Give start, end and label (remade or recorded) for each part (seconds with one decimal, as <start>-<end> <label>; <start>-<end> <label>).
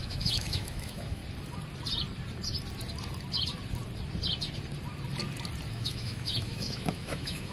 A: 0.0-1.2 remade; 1.2-5.7 recorded; 5.7-7.5 remade